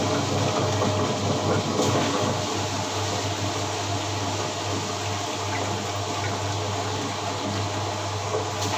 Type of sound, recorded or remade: recorded